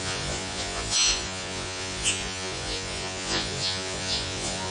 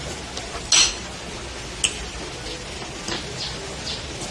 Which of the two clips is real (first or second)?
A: second